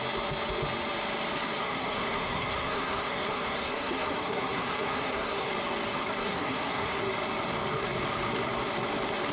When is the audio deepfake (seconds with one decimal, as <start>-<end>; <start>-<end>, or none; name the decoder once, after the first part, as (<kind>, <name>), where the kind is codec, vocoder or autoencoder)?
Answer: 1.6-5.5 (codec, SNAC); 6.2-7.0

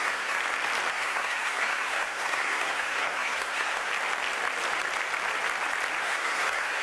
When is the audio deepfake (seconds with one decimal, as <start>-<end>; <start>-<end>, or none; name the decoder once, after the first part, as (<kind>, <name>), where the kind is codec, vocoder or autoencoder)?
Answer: 0.0-0.4 (codec, SNAC); 0.9-3.9; 6.0-6.8

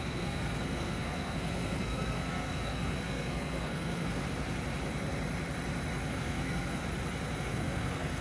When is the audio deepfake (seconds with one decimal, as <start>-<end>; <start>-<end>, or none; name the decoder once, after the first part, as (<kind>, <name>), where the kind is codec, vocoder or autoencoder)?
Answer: 0.0-4.2 (codec, SNAC); 6.1-6.8; 7.4-8.2

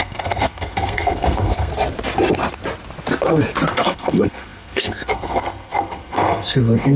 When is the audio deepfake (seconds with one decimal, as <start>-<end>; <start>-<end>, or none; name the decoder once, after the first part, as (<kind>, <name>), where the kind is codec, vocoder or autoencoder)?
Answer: 0.0-1.7 (codec, SNAC); 3.7-7.0

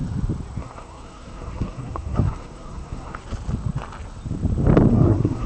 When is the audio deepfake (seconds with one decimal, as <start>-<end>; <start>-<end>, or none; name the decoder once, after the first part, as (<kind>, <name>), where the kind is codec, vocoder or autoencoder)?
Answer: 0.6-3.2 (codec, SNAC); 4.9-5.5